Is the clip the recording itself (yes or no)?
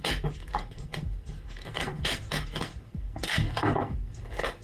no